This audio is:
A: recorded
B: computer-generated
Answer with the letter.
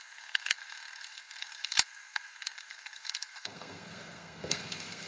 B